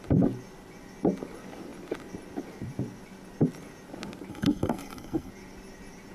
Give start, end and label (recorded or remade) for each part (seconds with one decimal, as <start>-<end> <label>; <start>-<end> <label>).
0.0-4.3 recorded; 4.3-5.3 remade; 5.3-6.1 recorded